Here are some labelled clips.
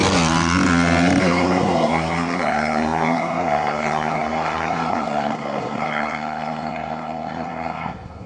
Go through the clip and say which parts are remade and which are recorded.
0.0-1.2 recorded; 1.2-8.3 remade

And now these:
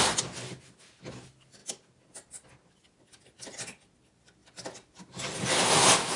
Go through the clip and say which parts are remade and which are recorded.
0.0-6.2 recorded

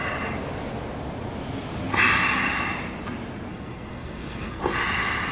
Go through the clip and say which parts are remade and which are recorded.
0.0-3.5 recorded; 3.5-4.6 remade; 4.6-5.3 recorded